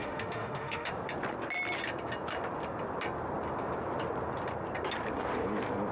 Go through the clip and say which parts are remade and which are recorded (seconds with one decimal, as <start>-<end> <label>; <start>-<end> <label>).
0.0-0.9 remade; 0.9-5.9 recorded